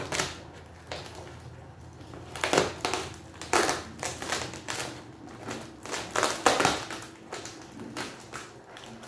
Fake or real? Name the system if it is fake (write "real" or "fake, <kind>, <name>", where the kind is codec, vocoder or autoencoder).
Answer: real